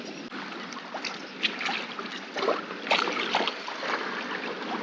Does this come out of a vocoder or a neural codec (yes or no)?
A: no